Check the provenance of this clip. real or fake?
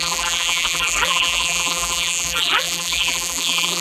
fake